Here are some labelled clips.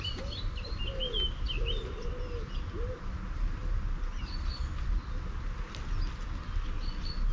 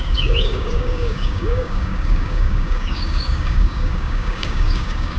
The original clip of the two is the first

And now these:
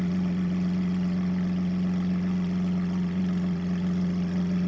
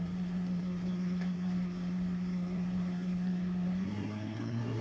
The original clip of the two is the first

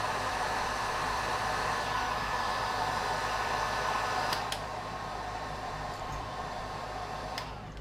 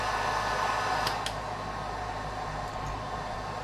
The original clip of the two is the second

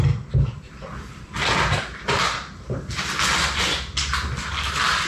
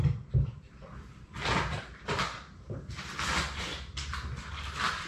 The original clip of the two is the first